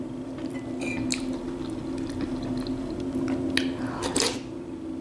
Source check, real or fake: real